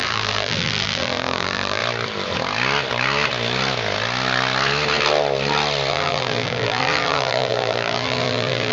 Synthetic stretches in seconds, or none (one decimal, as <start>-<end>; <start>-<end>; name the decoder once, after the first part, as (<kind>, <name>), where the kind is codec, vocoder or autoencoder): 0.0-1.8 (vocoder, BigVGAN v2); 5.9-8.7

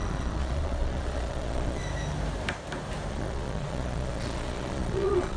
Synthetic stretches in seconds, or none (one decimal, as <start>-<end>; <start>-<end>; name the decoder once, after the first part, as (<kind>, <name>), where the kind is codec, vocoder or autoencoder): 0.0-1.8 (vocoder, Vocos); 3.1-5.4

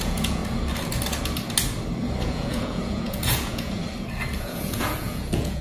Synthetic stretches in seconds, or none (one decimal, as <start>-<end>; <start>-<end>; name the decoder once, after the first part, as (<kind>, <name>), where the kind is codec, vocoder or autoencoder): 0.0-0.4 (vocoder, Vocos); 2.2-3.8; 4.4-5.6

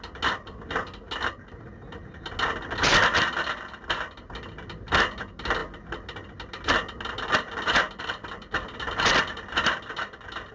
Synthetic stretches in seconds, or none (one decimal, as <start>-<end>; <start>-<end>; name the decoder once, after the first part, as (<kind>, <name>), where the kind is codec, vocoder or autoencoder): none

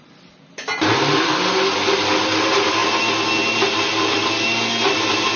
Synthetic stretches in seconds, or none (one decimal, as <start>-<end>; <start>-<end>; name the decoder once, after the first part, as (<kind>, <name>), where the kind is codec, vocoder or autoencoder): none

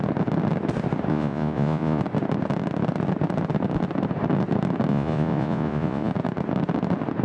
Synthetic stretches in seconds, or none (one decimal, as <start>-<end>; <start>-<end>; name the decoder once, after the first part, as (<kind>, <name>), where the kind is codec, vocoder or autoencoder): 1.1-2.0 (vocoder, Vocos); 4.9-6.1

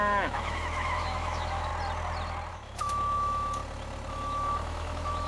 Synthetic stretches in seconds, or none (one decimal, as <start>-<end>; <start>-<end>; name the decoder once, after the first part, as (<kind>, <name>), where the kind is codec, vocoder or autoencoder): 0.0-1.7 (autoencoder, DAC-VAE); 2.5-3.6; 4.1-5.3